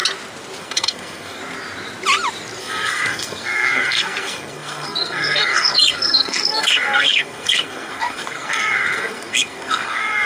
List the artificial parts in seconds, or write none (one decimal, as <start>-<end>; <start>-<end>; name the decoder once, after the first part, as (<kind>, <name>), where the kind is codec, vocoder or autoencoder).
0.6-1.4 (codec, SNAC); 2.6-10.3